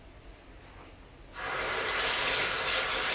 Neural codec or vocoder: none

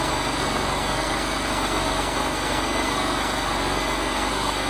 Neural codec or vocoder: codec, SNAC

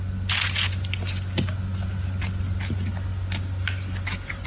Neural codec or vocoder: none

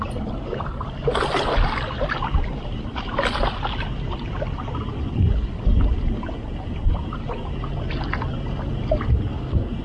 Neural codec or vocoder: none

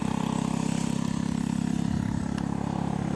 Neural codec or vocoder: none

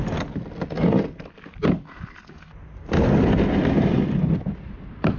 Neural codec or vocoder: none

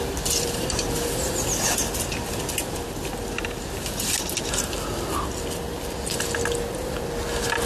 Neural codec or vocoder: none